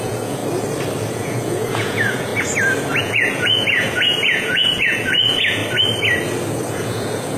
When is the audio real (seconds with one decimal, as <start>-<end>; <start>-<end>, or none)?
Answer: 0.4-1.1; 2.3-3.0; 5.6-6.7